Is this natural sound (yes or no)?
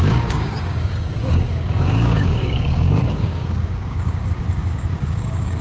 no